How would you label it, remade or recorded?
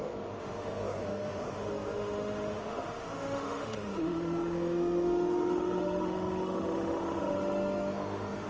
remade